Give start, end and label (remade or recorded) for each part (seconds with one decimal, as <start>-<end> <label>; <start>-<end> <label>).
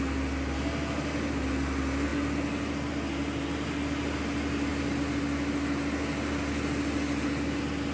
0.0-7.9 recorded